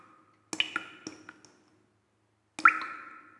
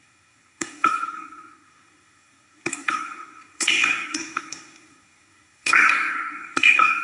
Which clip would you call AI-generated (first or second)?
second